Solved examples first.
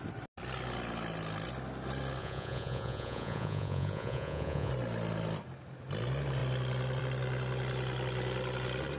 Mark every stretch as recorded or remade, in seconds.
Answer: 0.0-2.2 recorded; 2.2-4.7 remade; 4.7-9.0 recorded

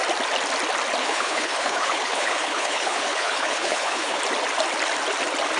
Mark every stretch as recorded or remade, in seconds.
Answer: 0.0-1.0 recorded; 1.0-4.2 remade; 4.2-5.6 recorded

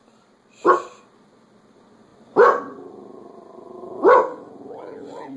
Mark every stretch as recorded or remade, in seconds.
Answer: 0.0-5.4 recorded

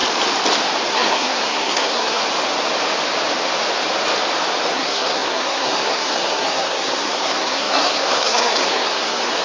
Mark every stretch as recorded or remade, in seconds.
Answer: 0.0-0.9 recorded; 0.9-2.2 remade; 2.2-4.7 recorded; 4.7-9.4 remade

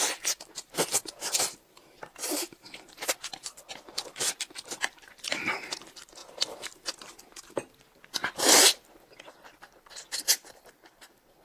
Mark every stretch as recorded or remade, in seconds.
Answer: 0.0-11.4 remade

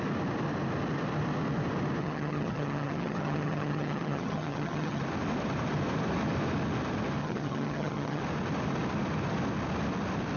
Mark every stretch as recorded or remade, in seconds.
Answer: 0.0-2.0 recorded; 2.0-5.0 remade; 5.0-7.2 recorded; 7.2-8.2 remade; 8.2-10.4 recorded

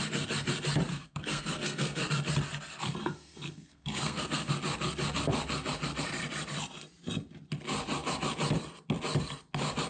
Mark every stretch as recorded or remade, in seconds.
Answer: 0.0-0.9 recorded; 0.9-2.1 remade; 2.1-3.0 recorded; 3.0-4.5 remade; 4.5-9.9 recorded

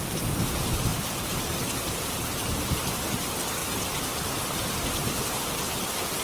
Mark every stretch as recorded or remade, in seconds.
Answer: 0.0-0.9 recorded; 0.9-2.6 remade; 2.6-6.2 recorded